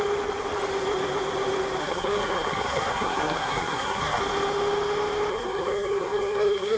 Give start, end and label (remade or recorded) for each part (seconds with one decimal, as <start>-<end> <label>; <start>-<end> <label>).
0.0-1.8 recorded; 1.8-4.2 remade; 4.2-5.3 recorded; 5.3-6.8 remade